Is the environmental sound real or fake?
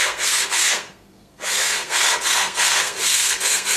fake